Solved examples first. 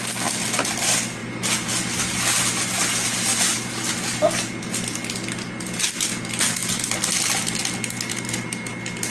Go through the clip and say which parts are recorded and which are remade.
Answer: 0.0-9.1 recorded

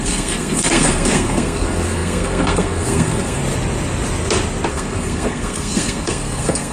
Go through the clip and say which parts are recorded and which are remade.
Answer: 0.0-3.4 remade; 3.4-4.7 recorded; 4.7-6.7 remade